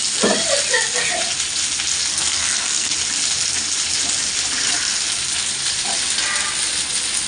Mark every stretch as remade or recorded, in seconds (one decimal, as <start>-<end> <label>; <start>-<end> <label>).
0.0-2.1 recorded; 2.1-2.9 remade; 2.9-7.3 recorded